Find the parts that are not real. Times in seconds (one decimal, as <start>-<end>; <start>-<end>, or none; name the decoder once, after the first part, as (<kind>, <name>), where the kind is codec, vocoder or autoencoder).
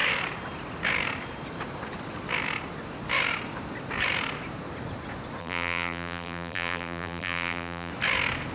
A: 5.4-7.9 (vocoder, BigVGAN v2)